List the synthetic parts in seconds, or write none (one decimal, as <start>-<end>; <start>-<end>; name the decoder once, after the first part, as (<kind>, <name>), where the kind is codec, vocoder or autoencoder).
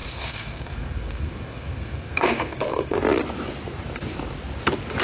0.0-3.0 (codec, SNAC)